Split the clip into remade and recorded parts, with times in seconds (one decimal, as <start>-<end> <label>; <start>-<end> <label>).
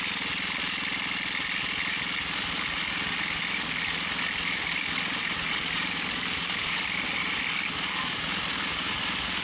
0.0-5.2 recorded; 5.2-7.4 remade; 7.4-9.4 recorded